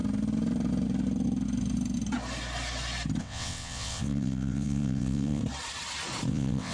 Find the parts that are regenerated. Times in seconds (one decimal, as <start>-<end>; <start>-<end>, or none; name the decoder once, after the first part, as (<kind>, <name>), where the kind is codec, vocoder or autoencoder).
3.2-5.4 (vocoder, WaveNeXt); 6.3-6.7